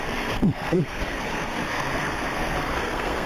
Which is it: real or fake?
fake